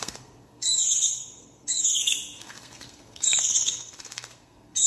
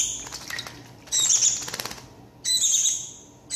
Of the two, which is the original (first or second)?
second